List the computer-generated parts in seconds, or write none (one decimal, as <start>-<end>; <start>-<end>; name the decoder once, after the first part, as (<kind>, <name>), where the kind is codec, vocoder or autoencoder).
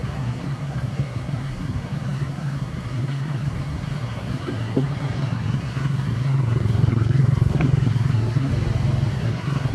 0.0-8.5 (codec, SNAC); 9.1-9.7